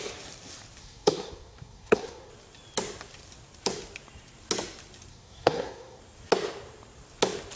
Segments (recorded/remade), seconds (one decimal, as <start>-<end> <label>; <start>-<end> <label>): 0.0-0.8 recorded; 0.8-2.3 remade; 2.3-5.1 recorded; 5.1-6.0 remade; 6.0-7.6 recorded